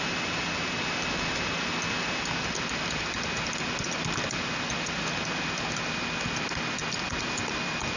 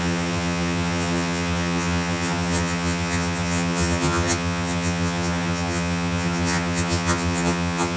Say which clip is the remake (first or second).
second